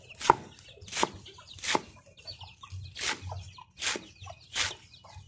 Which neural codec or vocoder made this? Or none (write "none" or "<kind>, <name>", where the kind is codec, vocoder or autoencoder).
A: none